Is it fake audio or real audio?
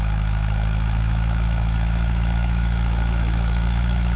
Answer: fake